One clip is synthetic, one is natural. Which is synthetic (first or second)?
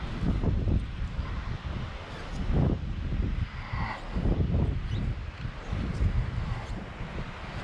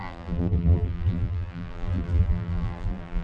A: second